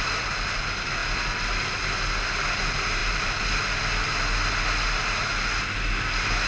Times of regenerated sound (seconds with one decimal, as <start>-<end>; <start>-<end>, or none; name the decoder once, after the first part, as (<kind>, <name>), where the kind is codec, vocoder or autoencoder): none